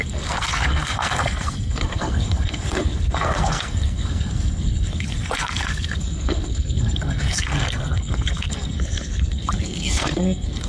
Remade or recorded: remade